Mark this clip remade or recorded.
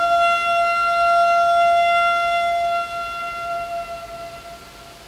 recorded